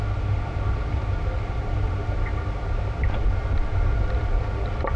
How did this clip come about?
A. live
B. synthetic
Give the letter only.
A